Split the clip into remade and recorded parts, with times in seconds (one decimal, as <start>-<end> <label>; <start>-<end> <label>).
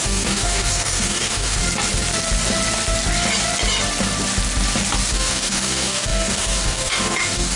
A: 0.0-1.6 remade; 1.6-5.1 recorded; 5.1-7.5 remade